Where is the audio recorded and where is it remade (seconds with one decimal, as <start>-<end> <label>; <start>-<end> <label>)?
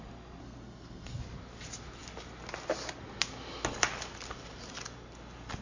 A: 0.0-0.4 recorded; 0.4-1.2 remade; 1.2-5.6 recorded